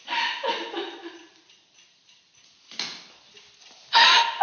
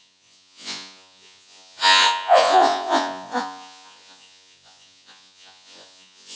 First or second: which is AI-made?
second